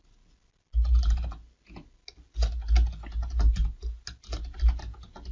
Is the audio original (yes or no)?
yes